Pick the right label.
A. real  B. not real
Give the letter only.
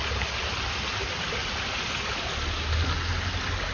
A